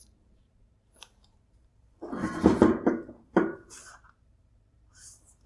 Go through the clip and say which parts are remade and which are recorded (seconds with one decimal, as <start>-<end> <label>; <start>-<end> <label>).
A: 0.0-5.5 remade